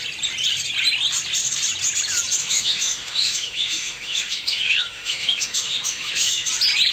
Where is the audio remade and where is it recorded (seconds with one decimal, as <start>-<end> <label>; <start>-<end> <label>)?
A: 0.0-2.4 recorded; 2.4-6.5 remade; 6.5-6.9 recorded

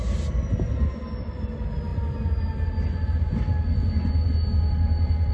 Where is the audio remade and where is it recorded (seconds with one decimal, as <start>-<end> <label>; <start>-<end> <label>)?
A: 0.0-5.3 recorded